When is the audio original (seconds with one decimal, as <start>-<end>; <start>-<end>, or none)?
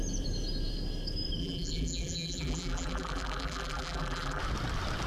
0.0-1.4; 4.4-5.1